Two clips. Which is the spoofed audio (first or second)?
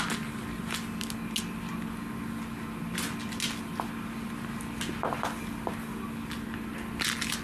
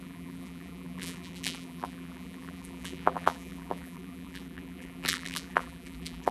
second